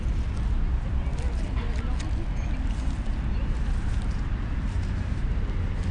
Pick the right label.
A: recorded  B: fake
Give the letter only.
A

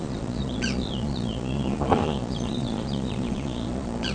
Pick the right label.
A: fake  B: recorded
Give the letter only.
A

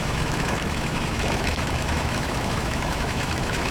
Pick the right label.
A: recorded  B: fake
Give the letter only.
B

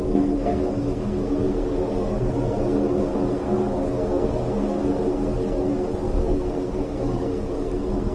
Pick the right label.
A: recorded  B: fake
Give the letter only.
B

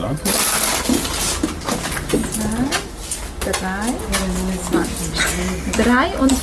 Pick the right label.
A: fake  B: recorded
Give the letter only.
B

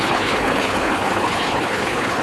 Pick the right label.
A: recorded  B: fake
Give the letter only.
B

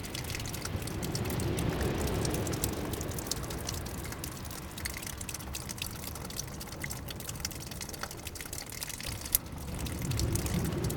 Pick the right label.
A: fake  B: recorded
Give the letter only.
B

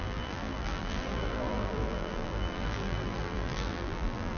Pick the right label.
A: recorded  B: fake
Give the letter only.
B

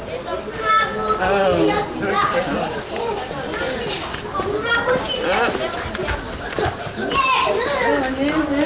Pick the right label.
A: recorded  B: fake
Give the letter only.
A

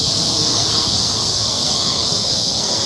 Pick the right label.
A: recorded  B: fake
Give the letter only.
B